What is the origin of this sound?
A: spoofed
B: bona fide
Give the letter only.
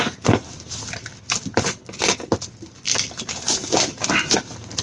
B